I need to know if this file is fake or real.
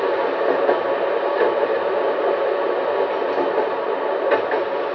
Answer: real